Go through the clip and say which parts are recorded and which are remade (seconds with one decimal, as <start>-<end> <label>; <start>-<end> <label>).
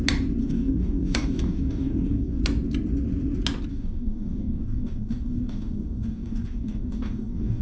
0.0-0.4 recorded; 0.4-2.4 remade; 2.4-3.7 recorded; 3.7-7.6 remade